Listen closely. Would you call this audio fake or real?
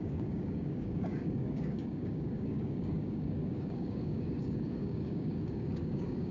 fake